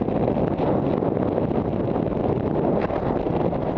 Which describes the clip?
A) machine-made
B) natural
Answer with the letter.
B